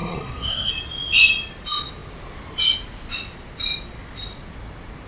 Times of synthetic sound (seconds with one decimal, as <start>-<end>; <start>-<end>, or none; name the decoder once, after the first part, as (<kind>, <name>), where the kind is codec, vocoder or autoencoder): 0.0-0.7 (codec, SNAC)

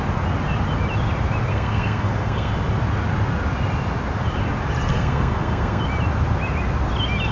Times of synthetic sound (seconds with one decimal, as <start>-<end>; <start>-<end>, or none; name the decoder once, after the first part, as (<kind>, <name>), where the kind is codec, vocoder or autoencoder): 1.5-2.5 (codec, SNAC); 4.9-5.8

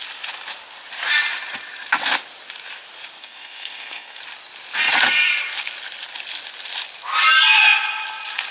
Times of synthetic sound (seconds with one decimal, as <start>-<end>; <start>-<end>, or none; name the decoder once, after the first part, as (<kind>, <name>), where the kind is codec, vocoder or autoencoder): 3.2-4.2 (codec, SNAC)

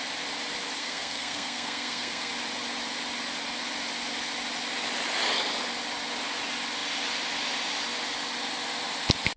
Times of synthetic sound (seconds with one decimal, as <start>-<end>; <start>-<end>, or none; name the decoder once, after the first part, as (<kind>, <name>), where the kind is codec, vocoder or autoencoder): 0.8-2.3 (codec, SNAC)

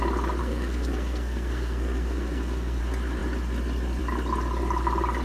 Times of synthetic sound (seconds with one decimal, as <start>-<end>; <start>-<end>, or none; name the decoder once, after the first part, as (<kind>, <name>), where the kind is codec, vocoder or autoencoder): 0.4-2.8 (codec, SNAC)

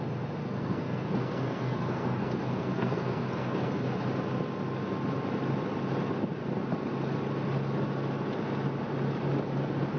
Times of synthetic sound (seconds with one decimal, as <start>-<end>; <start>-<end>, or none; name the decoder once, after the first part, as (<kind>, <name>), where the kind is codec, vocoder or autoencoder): 0.4-3.7 (codec, SNAC)